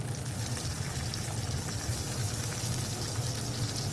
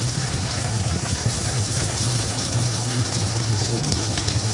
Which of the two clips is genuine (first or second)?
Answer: first